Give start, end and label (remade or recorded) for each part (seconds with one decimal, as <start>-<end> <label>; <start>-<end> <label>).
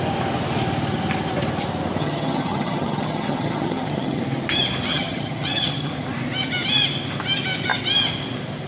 0.0-2.0 recorded; 2.0-4.2 remade; 4.2-4.9 recorded; 4.9-5.9 remade; 5.9-8.7 recorded